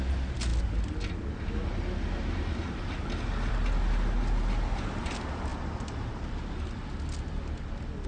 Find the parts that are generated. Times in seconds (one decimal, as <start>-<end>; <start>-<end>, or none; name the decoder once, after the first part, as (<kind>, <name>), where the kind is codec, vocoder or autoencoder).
none